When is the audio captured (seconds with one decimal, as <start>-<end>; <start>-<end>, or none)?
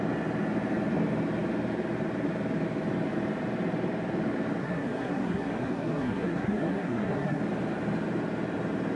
0.0-4.6; 7.4-9.0